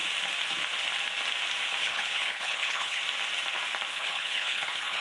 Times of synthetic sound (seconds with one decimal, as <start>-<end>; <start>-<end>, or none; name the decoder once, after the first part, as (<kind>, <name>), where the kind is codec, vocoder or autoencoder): 1.8-3.0 (codec, HILCodec); 3.9-5.0